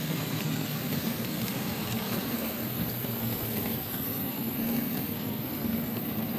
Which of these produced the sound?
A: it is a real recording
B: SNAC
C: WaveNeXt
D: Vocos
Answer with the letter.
B